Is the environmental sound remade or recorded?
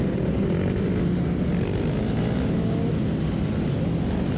recorded